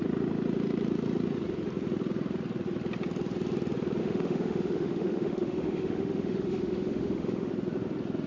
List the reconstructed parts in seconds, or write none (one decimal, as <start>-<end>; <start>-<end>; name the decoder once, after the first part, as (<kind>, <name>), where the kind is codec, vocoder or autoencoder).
4.0-7.5 (autoencoder, DAC-VAE)